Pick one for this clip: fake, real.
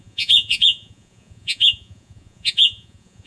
fake